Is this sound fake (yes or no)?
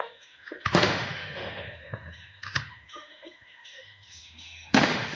yes